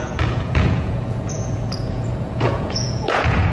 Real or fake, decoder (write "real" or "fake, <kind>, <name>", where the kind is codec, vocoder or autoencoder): fake, vocoder, Vocos